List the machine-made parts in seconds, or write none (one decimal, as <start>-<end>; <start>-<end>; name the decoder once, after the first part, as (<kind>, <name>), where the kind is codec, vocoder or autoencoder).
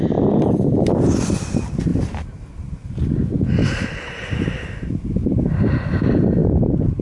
1.9-2.4 (vocoder, BigVGAN v2); 3.6-5.4; 6.4-7.0